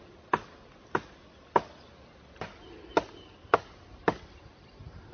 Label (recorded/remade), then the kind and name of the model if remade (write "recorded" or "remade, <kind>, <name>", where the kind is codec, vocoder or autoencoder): recorded